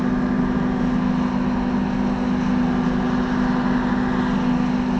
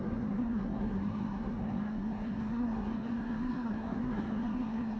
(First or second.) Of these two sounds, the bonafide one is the first